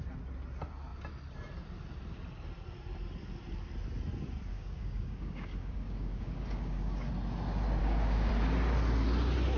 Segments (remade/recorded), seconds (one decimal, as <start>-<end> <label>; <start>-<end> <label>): 0.0-4.5 recorded; 4.5-7.1 remade; 7.1-7.8 recorded; 7.8-8.3 remade; 8.3-9.6 recorded